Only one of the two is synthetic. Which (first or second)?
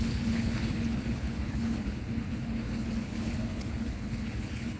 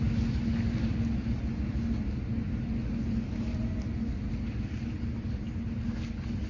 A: first